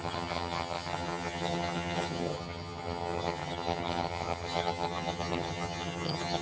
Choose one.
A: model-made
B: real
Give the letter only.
A